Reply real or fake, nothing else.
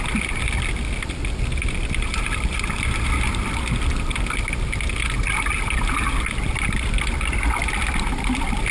real